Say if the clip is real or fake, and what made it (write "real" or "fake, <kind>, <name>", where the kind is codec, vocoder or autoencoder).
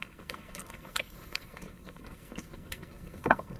fake, codec, SNAC